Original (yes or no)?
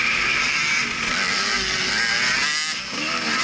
yes